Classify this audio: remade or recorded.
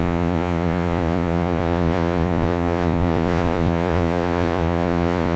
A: remade